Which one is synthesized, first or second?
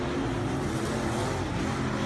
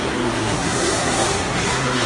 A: second